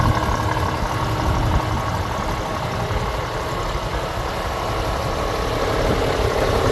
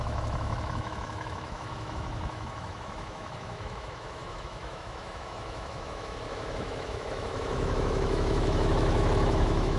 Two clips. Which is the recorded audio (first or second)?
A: first